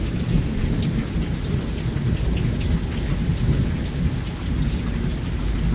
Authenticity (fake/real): real